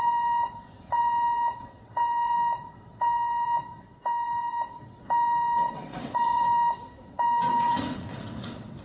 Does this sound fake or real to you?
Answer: fake